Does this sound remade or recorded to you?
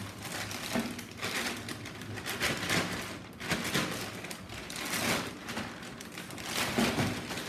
recorded